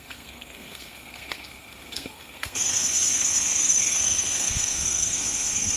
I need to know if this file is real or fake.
fake